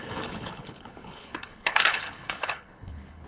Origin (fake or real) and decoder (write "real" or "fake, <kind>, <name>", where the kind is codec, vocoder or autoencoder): fake, codec, HILCodec